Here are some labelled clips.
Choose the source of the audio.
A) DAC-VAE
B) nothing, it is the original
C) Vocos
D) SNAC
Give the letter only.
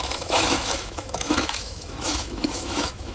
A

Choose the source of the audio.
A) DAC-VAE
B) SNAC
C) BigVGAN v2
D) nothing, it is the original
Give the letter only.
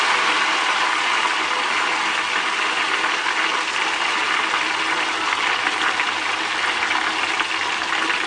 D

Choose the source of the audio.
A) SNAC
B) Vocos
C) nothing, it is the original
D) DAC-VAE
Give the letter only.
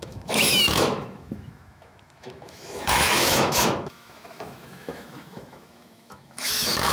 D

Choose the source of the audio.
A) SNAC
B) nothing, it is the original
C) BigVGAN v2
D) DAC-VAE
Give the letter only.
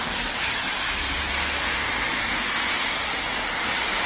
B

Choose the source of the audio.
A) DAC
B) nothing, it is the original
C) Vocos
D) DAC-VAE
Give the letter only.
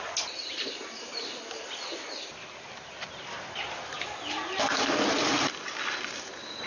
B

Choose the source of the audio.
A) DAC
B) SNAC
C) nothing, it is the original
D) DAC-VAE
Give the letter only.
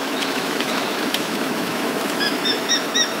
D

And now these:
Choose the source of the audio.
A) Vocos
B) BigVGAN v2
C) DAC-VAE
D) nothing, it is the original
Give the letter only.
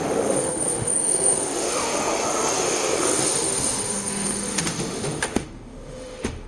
C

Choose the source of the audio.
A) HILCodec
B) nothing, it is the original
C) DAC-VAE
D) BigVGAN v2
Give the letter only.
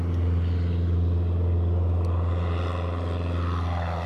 B